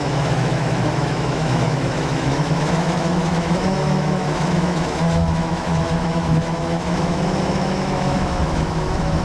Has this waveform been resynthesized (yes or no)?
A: yes